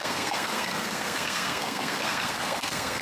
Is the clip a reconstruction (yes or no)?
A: yes